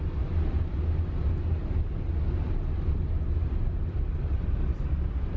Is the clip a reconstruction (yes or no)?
no